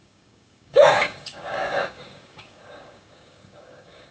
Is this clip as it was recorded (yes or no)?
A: no